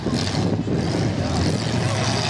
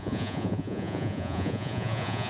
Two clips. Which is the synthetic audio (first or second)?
second